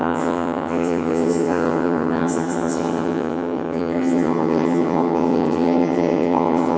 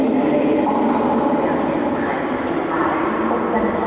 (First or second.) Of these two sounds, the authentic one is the second